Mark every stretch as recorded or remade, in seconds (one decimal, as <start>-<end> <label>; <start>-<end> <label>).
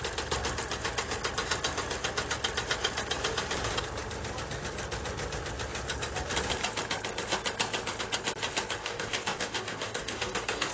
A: 0.0-8.8 recorded; 8.8-10.7 remade